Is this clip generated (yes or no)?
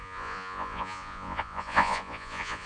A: yes